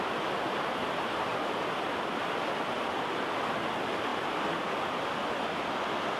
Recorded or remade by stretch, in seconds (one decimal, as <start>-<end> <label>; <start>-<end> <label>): 0.0-6.2 recorded